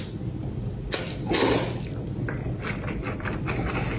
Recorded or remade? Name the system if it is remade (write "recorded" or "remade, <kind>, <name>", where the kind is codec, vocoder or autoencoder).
recorded